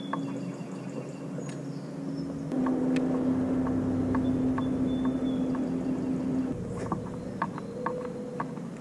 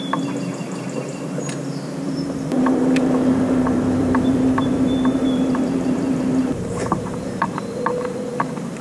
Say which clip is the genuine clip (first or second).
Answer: first